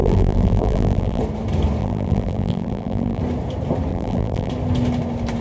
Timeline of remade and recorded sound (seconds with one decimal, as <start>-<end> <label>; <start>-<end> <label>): 0.0-1.2 remade; 1.2-1.8 recorded; 1.8-3.2 remade; 3.2-3.9 recorded; 3.9-4.5 remade; 4.5-5.4 recorded